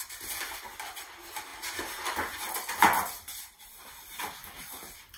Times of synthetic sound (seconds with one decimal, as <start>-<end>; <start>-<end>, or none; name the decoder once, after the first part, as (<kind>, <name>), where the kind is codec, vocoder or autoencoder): none